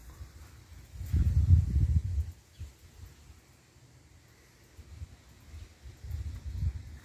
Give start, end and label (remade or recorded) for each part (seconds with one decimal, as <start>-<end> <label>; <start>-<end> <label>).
0.0-1.3 remade; 1.3-7.0 recorded